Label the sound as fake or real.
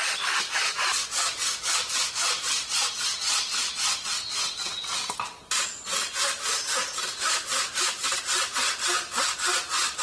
real